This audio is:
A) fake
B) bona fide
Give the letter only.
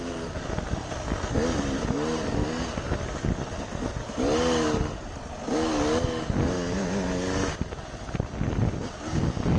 B